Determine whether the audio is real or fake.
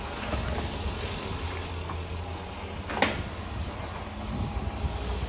real